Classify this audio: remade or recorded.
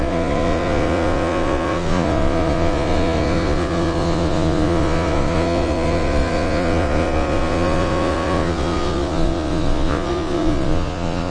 remade